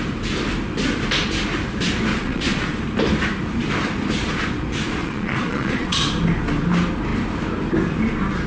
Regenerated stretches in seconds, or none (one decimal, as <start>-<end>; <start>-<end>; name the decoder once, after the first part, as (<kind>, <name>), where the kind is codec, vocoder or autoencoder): 2.1-2.6 (vocoder, Vocos); 5.0-6.0